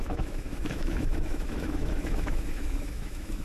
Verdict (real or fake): fake